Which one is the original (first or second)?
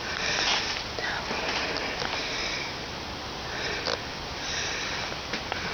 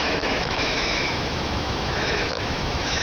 first